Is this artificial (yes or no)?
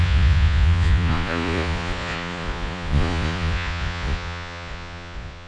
yes